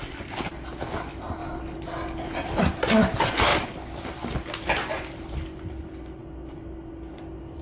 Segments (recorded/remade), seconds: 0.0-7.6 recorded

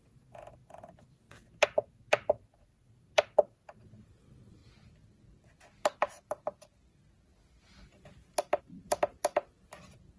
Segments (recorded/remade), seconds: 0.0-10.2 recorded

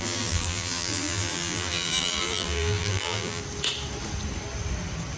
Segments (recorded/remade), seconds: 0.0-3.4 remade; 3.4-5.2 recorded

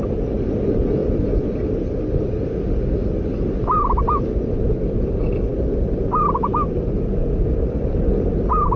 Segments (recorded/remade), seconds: 0.0-1.0 recorded; 1.0-1.6 remade; 1.6-8.8 recorded

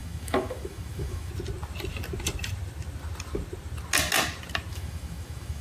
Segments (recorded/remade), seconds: 0.0-1.3 remade; 1.3-4.7 recorded; 4.7-5.6 remade

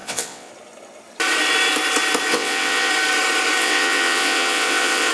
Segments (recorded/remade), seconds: 0.0-0.5 remade; 0.5-2.3 recorded; 2.3-2.9 remade; 2.9-3.6 recorded; 3.6-5.1 remade